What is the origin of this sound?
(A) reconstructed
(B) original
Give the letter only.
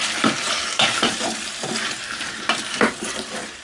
A